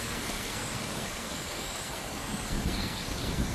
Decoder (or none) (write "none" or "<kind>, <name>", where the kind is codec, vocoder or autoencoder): codec, SNAC